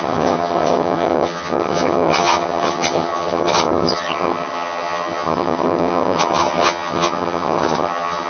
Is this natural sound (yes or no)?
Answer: no